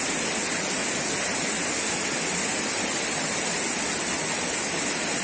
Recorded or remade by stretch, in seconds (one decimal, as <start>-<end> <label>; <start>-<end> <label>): 0.0-5.2 recorded